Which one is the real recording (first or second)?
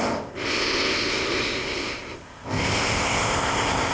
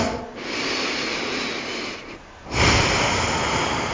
second